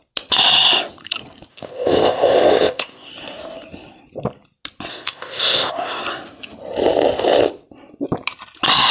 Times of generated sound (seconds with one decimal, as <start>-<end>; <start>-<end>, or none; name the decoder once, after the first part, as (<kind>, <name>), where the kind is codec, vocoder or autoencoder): 1.5-3.1 (codec, ZipCodec); 4.9-6.0